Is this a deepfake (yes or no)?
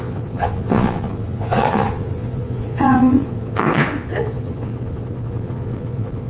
yes